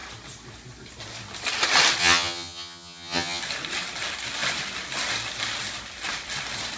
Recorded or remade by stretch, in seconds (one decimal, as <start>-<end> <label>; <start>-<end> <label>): 0.0-2.0 recorded; 2.0-3.4 remade; 3.4-6.8 recorded